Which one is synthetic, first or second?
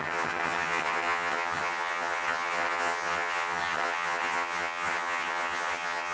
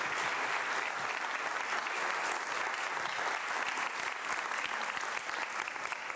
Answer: first